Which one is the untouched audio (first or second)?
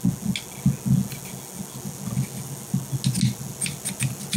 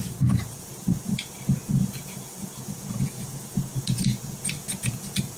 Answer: first